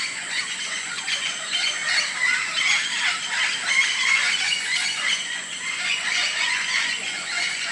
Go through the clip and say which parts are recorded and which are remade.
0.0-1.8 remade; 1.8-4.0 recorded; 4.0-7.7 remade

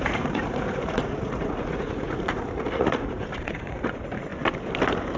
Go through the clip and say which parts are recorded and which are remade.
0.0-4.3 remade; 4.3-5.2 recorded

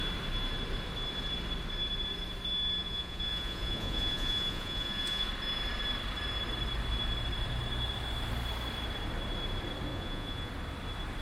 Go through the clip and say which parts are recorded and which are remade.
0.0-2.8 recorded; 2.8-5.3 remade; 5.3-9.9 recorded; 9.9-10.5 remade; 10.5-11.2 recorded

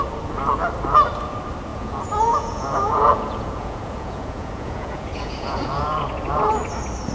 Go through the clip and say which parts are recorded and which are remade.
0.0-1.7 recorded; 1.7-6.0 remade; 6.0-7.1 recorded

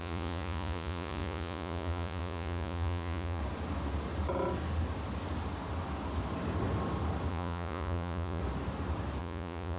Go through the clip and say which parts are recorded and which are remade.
0.0-3.4 remade; 3.4-7.3 recorded; 7.3-8.4 remade; 8.4-9.2 recorded; 9.2-9.8 remade